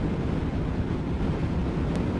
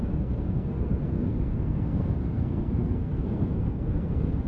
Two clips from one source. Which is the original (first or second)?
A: first